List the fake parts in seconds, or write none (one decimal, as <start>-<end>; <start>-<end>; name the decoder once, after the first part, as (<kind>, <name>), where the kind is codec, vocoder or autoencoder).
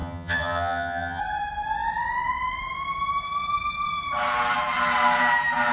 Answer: 0.0-1.2 (vocoder, HiFi-GAN)